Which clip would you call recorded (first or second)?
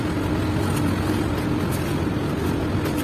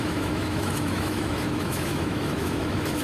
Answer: first